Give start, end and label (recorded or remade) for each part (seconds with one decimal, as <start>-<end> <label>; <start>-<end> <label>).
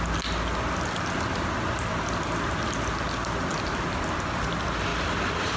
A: 0.0-5.6 recorded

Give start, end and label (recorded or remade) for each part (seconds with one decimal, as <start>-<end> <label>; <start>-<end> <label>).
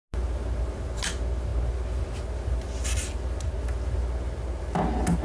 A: 0.0-5.2 recorded